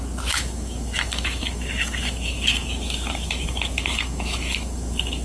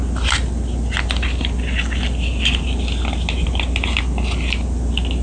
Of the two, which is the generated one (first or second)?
first